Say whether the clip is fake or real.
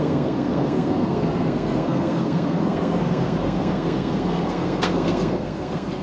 fake